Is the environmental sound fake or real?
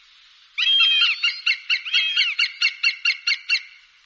real